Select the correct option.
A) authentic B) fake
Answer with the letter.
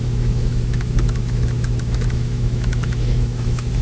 B